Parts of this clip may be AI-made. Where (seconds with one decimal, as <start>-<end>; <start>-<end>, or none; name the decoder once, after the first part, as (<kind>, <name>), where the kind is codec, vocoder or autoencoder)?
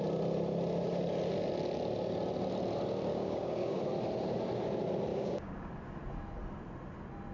3.1-3.8 (codec, DAC); 5.1-5.7